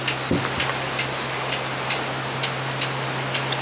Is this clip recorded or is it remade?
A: recorded